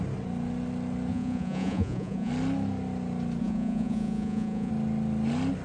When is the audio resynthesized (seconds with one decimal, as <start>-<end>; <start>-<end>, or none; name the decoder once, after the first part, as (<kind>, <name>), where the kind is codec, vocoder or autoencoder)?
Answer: 1.1-2.3 (vocoder, Vocos); 3.4-4.7